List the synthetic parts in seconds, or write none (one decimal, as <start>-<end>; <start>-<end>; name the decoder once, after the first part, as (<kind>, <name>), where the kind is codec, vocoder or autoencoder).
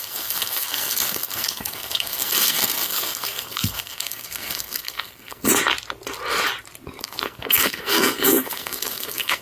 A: 0.0-5.5 (codec, SNAC); 7.0-9.4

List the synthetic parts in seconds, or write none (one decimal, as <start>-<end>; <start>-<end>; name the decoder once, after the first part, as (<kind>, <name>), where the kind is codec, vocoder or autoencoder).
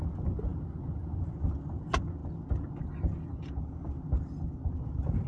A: none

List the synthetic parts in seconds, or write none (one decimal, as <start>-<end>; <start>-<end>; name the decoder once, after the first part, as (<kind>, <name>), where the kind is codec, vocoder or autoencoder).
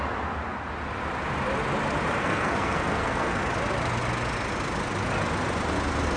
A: 2.2-3.4 (codec, SNAC)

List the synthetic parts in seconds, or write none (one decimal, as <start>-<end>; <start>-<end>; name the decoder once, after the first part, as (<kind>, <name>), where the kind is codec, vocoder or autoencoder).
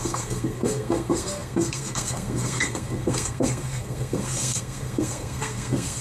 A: 0.0-6.0 (codec, SNAC)